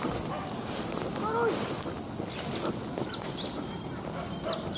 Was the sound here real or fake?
real